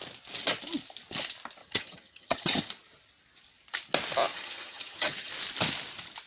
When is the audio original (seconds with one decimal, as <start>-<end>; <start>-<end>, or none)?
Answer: 0.0-1.6; 2.7-4.3; 5.3-6.3